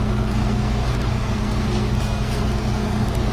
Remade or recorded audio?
remade